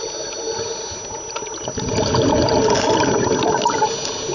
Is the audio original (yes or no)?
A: yes